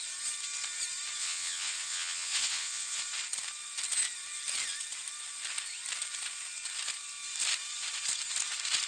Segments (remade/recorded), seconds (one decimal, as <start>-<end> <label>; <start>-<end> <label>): 0.0-1.2 recorded; 1.2-3.0 remade; 3.0-8.9 recorded